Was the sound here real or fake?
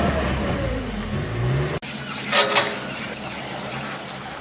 real